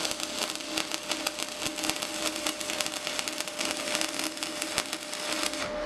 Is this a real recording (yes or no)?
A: yes